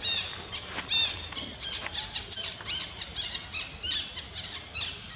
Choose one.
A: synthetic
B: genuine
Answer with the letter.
B